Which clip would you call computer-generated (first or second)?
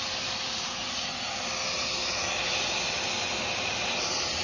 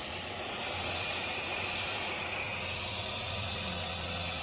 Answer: second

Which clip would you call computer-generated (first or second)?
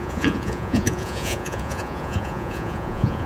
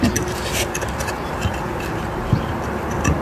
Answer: first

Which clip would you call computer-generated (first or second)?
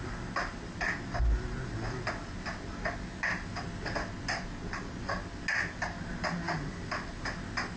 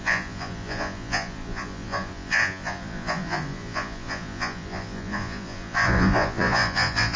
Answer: second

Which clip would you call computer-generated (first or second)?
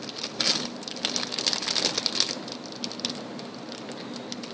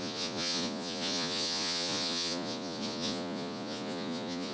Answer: second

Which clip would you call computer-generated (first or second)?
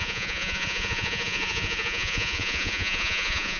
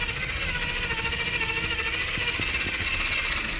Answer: first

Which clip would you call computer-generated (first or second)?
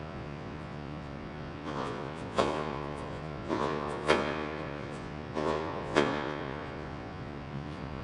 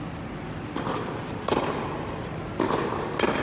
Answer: first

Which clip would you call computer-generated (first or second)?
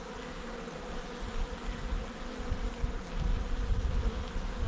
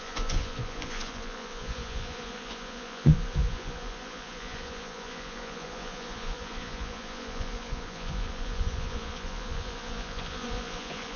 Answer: second